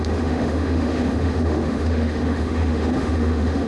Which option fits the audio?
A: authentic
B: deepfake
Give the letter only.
B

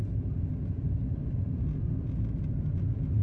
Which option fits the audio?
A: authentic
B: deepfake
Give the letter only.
A